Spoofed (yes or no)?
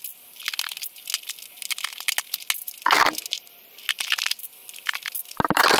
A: no